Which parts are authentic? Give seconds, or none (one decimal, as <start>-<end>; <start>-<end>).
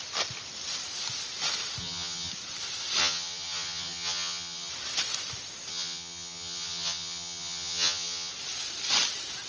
0.0-1.8; 2.3-3.0; 4.7-5.7; 8.3-9.5